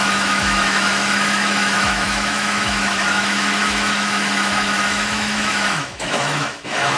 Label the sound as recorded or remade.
remade